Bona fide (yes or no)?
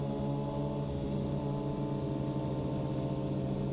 yes